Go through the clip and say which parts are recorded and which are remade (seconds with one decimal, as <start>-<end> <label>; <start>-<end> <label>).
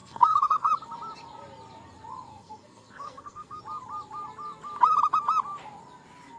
0.0-0.7 remade; 0.7-2.3 recorded; 2.3-3.6 remade; 3.6-6.4 recorded